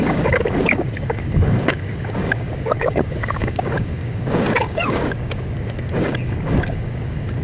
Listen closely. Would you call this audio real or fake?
fake